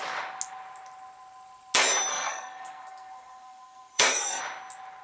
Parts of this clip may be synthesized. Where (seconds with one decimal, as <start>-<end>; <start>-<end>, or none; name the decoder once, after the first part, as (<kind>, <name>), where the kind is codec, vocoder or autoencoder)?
2.1-4.4 (codec, SNAC)